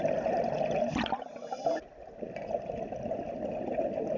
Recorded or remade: recorded